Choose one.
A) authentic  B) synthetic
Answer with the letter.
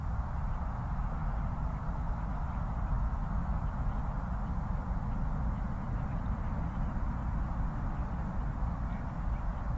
A